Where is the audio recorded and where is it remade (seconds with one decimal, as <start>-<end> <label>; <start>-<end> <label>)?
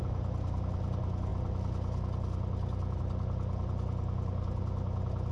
0.0-5.3 recorded